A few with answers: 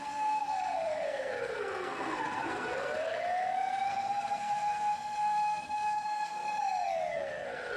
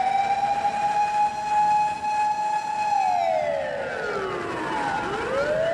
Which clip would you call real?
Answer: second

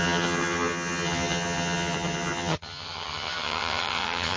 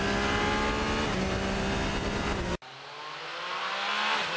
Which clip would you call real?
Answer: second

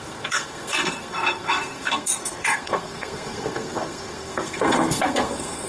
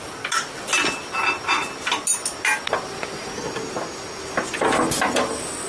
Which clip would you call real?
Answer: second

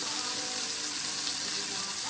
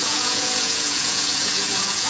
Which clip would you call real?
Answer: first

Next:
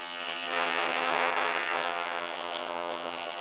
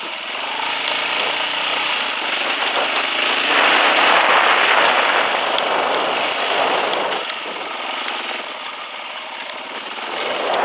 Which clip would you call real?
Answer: second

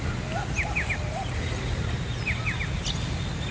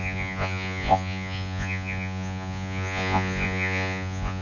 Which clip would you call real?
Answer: first